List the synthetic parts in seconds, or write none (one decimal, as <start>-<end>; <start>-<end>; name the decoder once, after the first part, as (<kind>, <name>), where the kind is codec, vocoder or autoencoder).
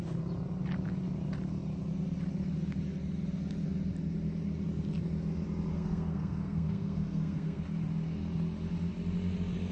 5.7-7.6 (codec, SNAC)